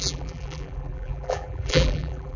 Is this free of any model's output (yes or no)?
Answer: no